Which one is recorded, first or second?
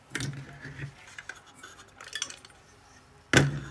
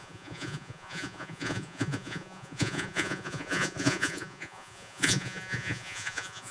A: first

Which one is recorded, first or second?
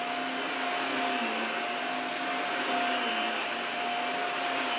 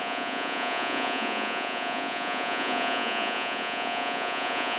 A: first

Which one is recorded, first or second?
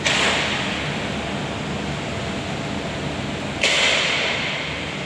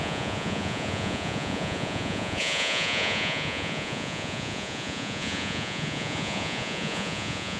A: first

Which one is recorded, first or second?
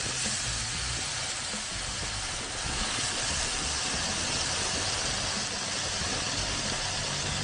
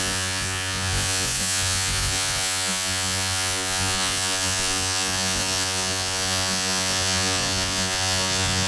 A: first